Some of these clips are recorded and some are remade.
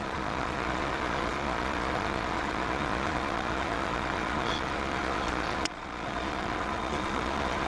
remade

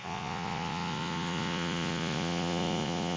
remade